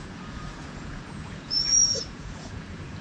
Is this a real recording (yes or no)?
no